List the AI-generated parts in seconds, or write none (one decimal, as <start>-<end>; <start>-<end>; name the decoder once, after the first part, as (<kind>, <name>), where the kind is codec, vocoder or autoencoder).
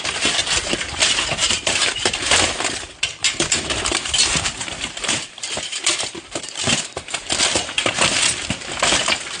1.4-2.4 (vocoder, BigVGAN v2); 3.2-7.3